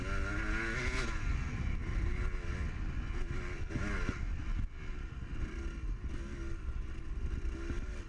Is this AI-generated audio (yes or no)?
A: no